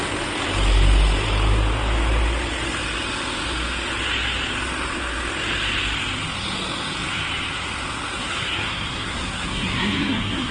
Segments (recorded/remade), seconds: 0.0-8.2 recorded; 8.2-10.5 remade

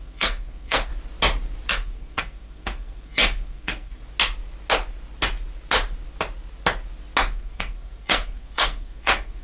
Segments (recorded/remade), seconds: 0.0-0.9 remade; 0.9-1.7 recorded; 1.7-4.0 remade; 4.0-7.2 recorded; 7.2-9.4 remade

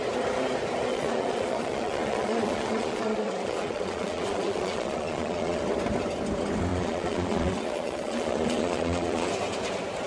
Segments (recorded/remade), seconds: 0.0-0.9 recorded; 0.9-5.6 remade; 5.6-6.7 recorded; 6.7-9.3 remade; 9.3-10.1 recorded

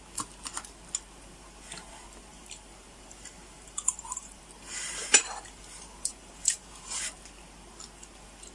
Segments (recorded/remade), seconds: 0.0-2.3 recorded; 2.3-4.4 remade; 4.4-5.0 recorded; 5.0-7.0 remade; 7.0-8.5 recorded

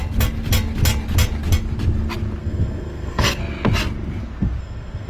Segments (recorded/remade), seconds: 0.0-2.4 recorded; 2.4-3.4 remade; 3.4-4.6 recorded; 4.6-5.1 remade

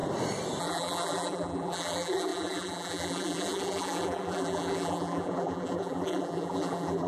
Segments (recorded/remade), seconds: 0.0-0.6 recorded; 0.6-7.1 remade